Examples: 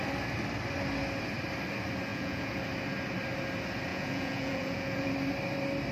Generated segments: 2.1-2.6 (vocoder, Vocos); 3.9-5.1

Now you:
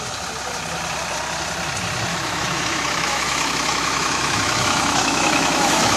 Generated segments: 2.1-6.0 (autoencoder, DAC-VAE)

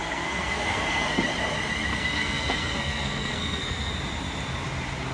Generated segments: 0.0-1.2 (codec, SNAC); 1.9-3.9

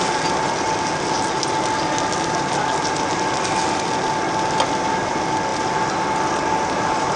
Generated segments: none